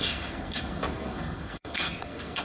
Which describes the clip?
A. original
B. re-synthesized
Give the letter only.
B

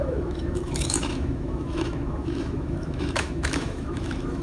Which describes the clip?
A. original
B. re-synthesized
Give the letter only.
B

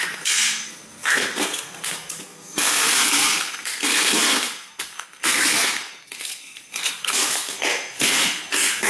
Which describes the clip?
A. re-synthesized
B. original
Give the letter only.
A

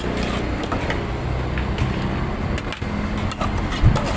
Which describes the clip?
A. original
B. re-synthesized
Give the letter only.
A